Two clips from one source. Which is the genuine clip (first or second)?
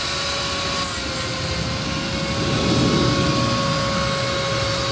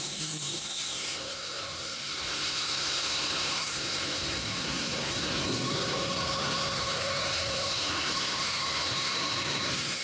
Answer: first